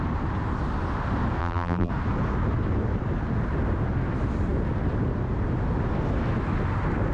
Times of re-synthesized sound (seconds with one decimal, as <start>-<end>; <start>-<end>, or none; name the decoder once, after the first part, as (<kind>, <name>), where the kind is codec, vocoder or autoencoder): 1.4-1.9 (vocoder, BigVGAN v2)